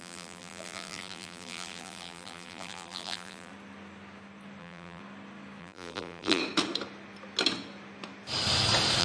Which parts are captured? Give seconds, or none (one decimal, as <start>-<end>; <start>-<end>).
3.5-4.6; 5.0-5.6; 6.4-9.0